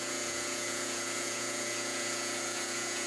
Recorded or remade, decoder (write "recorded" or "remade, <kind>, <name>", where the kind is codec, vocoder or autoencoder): remade, vocoder, Vocos